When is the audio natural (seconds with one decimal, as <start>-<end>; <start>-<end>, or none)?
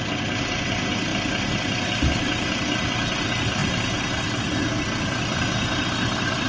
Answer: 0.0-6.5